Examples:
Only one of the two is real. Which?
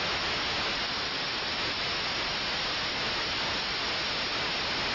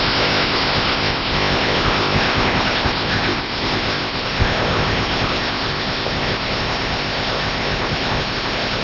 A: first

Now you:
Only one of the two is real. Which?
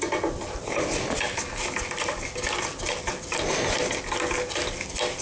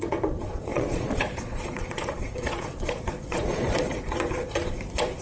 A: first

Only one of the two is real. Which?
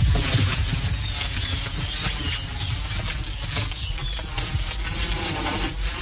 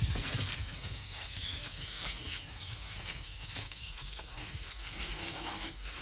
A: first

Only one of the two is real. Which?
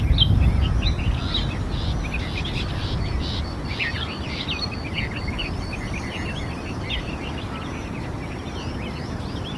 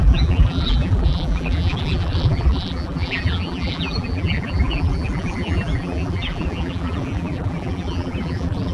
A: first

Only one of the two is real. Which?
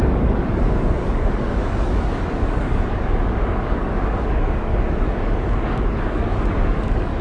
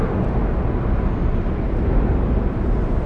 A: second